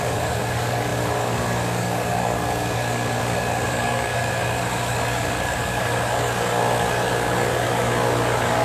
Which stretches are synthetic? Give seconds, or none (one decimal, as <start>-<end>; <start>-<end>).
0.0-8.6